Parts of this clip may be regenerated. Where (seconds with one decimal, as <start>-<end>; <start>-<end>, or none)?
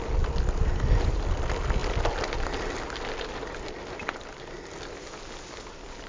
none